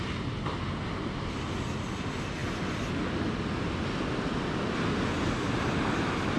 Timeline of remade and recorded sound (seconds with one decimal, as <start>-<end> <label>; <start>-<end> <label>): 0.0-6.4 recorded

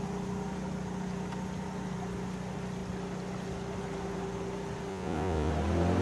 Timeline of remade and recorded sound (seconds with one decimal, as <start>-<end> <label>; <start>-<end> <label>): 0.0-4.9 recorded; 4.9-5.5 remade; 5.5-6.0 recorded

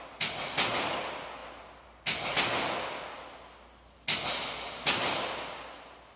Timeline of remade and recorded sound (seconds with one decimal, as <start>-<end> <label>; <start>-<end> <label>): 0.0-6.2 recorded